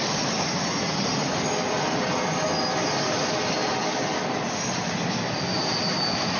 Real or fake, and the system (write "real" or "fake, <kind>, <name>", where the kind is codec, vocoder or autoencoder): real